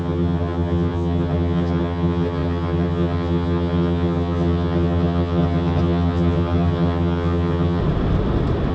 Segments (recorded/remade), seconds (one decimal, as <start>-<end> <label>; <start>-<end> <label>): 0.0-7.8 remade; 7.8-8.7 recorded